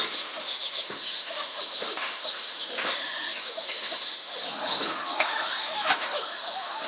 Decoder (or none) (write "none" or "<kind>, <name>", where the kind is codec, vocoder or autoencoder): autoencoder, DAC-VAE